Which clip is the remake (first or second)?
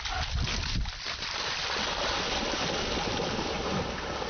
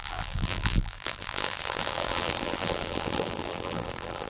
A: second